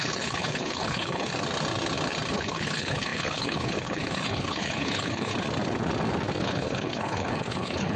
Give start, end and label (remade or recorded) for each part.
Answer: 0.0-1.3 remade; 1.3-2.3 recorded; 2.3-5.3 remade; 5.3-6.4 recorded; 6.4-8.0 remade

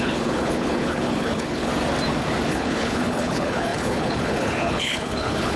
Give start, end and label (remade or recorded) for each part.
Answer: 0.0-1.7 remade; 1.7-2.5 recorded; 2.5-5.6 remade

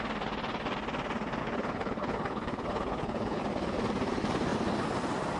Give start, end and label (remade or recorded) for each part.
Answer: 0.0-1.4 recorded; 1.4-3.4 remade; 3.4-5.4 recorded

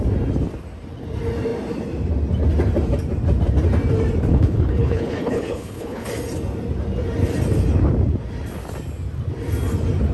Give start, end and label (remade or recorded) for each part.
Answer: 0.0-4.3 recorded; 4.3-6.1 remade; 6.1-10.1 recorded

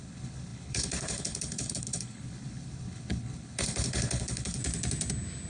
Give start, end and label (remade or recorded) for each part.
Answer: 0.0-4.6 remade; 4.6-5.5 recorded